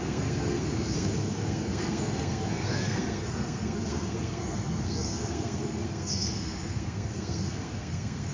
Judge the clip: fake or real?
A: fake